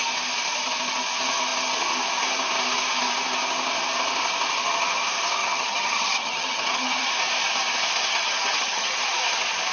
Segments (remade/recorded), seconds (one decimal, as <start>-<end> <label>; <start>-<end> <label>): 0.0-5.4 recorded; 5.4-7.1 remade; 7.1-8.1 recorded; 8.1-8.9 remade; 8.9-9.7 recorded